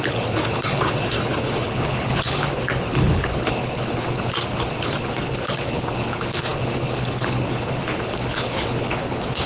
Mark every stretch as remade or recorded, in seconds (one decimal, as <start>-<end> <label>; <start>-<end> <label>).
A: 0.0-9.5 remade